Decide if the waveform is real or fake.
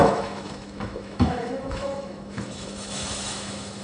fake